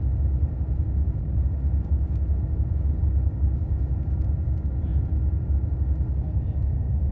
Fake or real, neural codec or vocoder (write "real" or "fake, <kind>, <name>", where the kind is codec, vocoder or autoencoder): real